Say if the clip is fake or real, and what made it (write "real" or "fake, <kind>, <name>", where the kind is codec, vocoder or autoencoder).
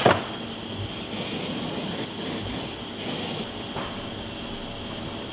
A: real